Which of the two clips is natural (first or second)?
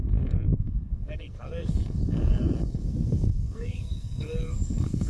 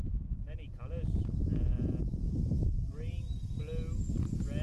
second